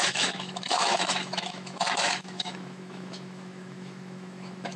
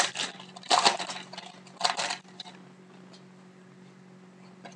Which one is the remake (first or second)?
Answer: first